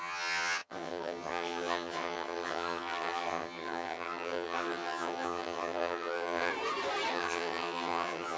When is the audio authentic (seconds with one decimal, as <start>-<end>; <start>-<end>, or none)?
6.5-7.1